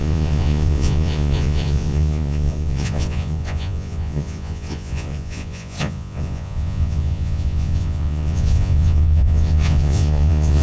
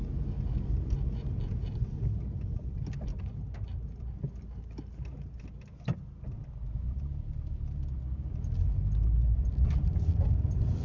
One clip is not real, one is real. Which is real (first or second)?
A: second